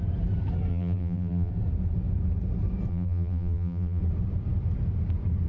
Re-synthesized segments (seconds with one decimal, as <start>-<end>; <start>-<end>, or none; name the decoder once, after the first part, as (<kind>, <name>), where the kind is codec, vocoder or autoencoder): 0.7-1.5 (vocoder, BigVGAN v2); 2.9-4.0